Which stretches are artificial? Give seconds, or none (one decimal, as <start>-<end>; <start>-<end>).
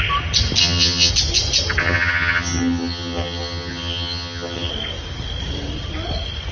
0.6-1.1; 1.8-4.7